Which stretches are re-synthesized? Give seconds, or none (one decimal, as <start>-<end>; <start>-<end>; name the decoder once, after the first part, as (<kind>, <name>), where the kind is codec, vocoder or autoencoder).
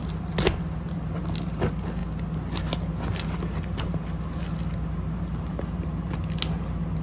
none